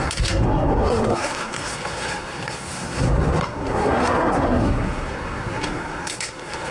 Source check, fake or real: fake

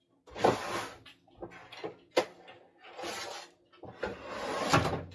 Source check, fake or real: real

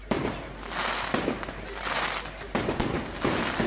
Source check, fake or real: real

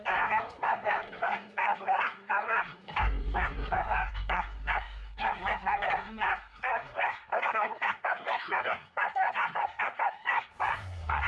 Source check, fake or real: fake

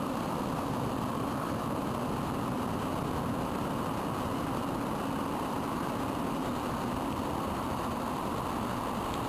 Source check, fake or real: real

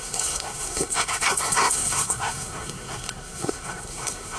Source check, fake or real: fake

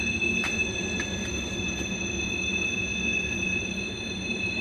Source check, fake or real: real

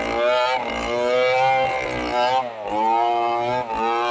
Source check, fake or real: real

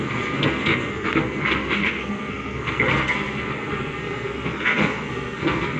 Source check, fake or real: fake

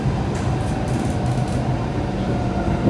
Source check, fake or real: real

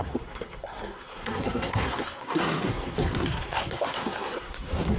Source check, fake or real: fake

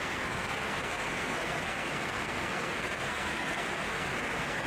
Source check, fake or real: fake